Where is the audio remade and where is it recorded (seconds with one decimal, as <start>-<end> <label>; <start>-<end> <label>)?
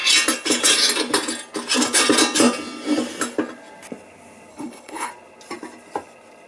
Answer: 0.0-4.5 recorded; 4.5-5.1 remade; 5.1-6.5 recorded